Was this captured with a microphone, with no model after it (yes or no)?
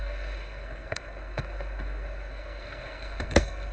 no